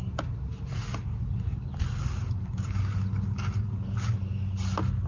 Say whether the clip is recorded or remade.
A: recorded